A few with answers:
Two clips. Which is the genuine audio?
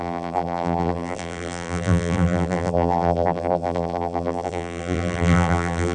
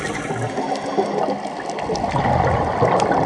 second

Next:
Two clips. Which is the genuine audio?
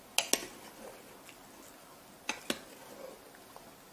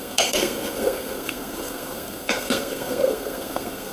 first